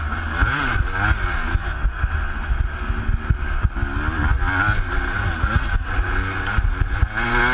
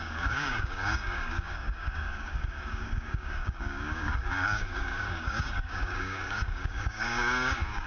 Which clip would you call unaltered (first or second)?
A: first